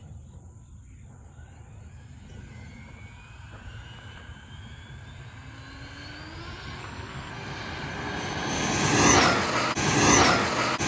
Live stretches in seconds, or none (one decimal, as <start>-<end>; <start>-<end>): 0.0-6.8; 7.3-10.9